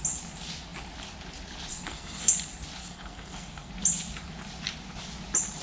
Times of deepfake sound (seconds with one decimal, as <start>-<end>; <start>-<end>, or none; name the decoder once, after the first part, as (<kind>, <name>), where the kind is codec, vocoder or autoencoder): 1.7-2.3 (codec, SNAC); 2.8-3.7